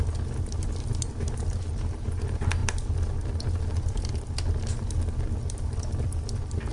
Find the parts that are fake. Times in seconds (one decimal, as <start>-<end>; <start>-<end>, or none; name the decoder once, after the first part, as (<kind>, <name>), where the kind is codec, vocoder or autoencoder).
none